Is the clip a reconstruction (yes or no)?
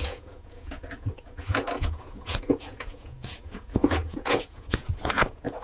yes